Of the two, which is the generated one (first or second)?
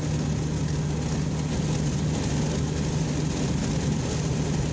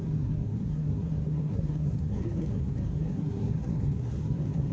second